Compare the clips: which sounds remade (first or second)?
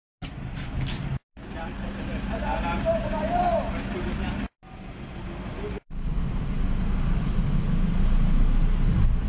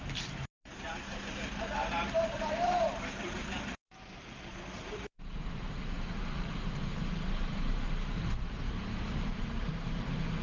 second